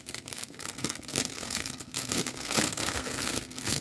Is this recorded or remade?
remade